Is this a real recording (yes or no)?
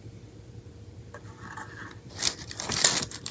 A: no